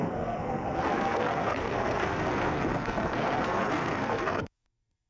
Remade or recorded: remade